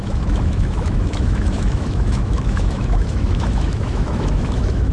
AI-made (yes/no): yes